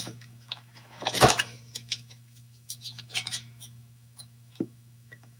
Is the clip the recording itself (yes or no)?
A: no